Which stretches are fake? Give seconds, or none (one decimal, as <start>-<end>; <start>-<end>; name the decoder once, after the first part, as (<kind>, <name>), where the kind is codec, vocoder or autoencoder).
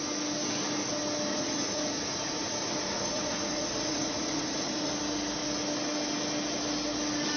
1.3-4.9 (vocoder, Vocos)